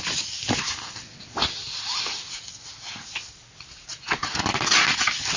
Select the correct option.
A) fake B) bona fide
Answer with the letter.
B